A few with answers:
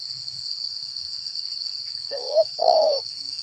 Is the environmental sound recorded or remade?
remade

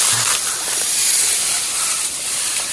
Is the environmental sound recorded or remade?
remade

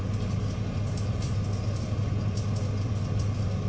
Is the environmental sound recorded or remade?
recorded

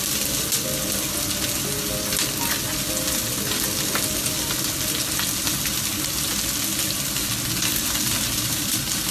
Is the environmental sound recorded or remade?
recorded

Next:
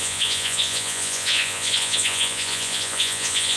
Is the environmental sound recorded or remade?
remade